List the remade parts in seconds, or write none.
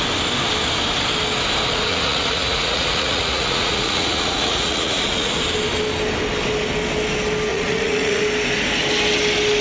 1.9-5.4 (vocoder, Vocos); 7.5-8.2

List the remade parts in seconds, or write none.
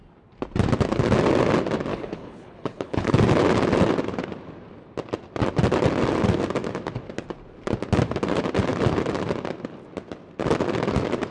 1.9-3.2 (codec, HILCodec)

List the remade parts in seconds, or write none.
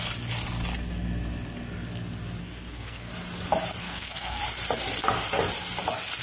2.4-3.1 (codec, SNAC); 3.8-4.4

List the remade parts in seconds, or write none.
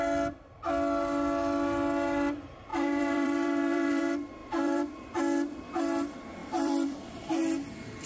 2.7-4.0 (vocoder, BigVGAN v2); 4.4-5.2; 6.4-7.4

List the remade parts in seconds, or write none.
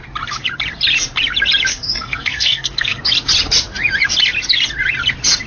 1.7-3.0 (codec, SNAC)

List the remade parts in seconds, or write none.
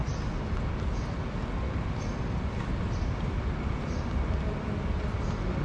none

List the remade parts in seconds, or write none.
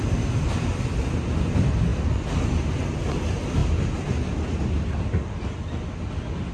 none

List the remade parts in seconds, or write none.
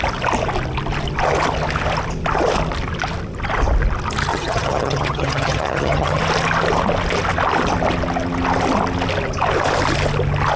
4.3-6.2 (vocoder, HiFi-GAN)